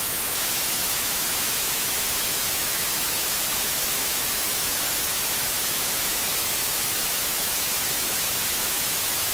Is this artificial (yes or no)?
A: yes